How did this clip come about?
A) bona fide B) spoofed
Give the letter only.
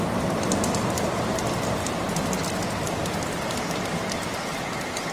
A